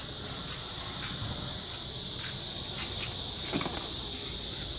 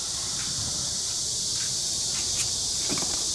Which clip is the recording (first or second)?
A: first